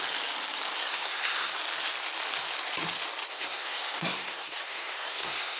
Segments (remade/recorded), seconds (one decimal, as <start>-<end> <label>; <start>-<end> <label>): 0.0-0.8 recorded; 0.8-1.5 remade; 1.5-3.3 recorded; 3.3-5.6 remade